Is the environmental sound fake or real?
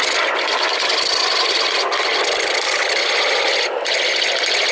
real